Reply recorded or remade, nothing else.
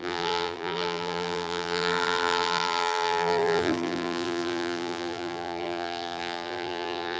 remade